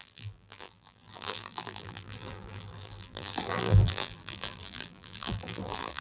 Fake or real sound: fake